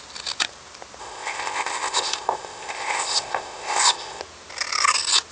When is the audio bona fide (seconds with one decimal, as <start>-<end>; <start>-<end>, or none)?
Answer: 0.0-1.0; 4.2-5.3